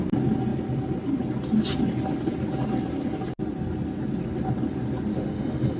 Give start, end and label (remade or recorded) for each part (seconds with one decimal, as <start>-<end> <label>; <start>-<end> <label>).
0.0-5.1 recorded; 5.1-5.8 remade